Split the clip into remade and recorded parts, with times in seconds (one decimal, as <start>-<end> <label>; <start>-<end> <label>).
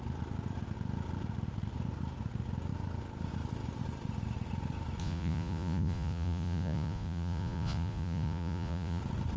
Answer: 0.0-5.0 recorded; 5.0-9.0 remade; 9.0-9.4 recorded